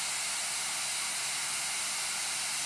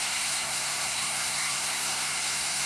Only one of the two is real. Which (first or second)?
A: first